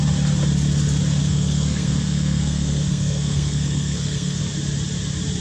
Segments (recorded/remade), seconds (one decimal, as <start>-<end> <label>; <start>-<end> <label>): 0.0-1.2 recorded; 1.2-4.4 remade; 4.4-5.4 recorded